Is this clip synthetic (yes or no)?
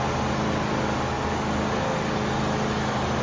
no